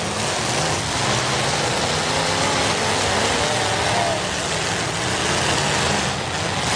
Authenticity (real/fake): real